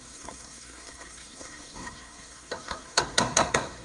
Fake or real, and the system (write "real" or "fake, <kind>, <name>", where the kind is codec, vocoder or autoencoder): fake, codec, SNAC